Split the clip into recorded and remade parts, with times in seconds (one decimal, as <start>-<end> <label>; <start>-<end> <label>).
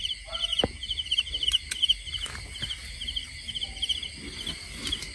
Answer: 0.0-5.1 recorded